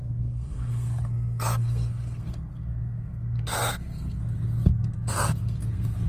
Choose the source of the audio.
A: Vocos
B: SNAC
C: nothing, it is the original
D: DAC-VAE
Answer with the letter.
B